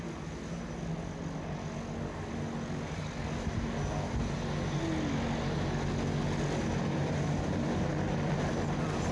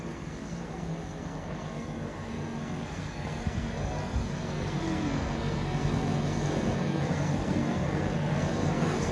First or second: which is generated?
second